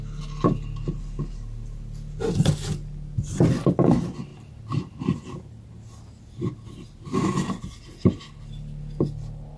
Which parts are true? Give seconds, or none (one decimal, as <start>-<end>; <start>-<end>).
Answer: 0.0-9.6

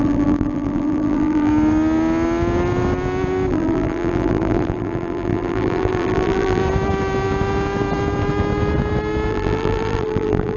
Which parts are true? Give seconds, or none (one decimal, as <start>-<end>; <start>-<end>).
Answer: 1.5-3.5; 6.6-9.3

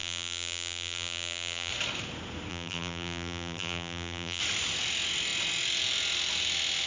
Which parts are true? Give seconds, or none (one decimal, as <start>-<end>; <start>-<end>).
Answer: 1.7-2.5; 4.4-6.9